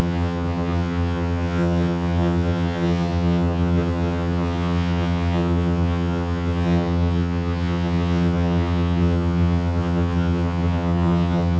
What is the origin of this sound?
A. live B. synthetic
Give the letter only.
B